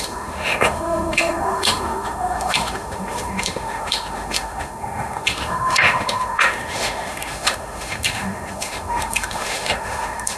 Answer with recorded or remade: remade